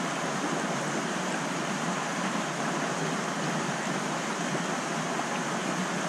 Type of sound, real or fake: real